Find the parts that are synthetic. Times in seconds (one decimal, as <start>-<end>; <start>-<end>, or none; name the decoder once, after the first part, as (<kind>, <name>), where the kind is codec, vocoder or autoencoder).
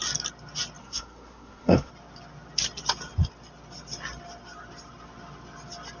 0.8-1.9 (codec, SNAC)